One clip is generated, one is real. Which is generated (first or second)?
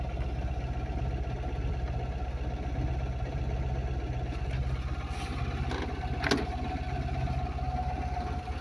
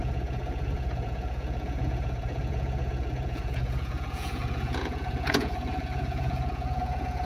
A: second